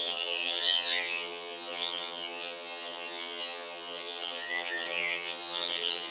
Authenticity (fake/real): fake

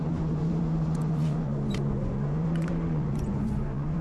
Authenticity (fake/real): fake